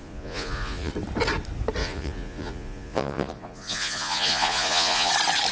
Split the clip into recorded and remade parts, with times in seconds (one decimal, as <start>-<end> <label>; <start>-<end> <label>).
0.0-0.9 remade; 0.9-1.8 recorded; 1.8-5.1 remade; 5.1-5.5 recorded